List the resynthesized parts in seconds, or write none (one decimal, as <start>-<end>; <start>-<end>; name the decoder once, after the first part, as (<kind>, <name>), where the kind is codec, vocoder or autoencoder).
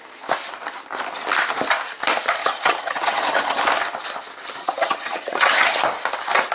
2.4-3.6 (vocoder, HiFi-GAN); 4.6-5.8